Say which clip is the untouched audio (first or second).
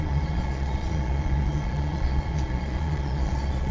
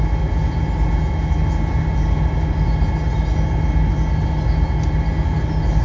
second